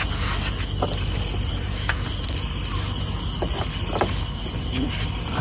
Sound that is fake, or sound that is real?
real